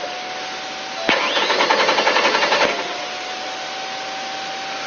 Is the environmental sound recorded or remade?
recorded